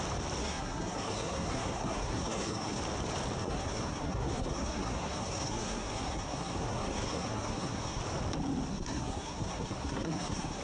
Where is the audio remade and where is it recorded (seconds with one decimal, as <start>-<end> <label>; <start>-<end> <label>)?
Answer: 0.0-0.4 recorded; 0.4-2.8 remade; 2.8-3.4 recorded; 3.4-8.0 remade; 8.0-8.7 recorded; 8.7-10.6 remade